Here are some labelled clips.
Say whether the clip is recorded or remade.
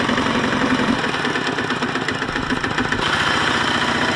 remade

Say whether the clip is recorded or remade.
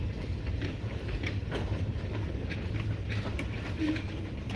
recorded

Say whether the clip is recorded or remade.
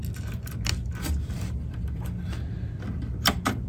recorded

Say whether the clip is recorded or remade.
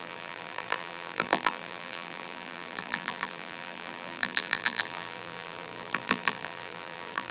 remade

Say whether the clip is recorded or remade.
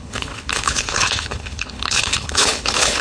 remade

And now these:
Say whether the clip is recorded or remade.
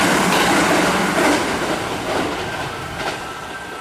recorded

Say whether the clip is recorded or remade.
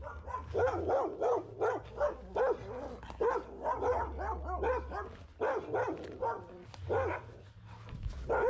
recorded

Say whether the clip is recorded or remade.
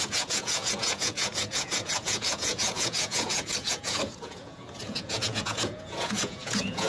remade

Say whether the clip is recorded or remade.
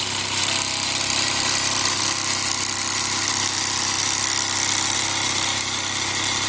recorded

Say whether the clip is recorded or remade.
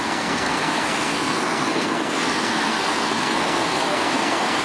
remade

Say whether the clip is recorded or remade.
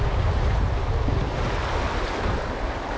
recorded